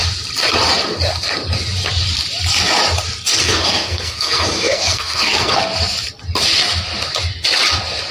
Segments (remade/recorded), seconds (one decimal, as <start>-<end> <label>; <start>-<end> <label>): 0.0-3.4 recorded; 3.4-5.6 remade; 5.6-8.1 recorded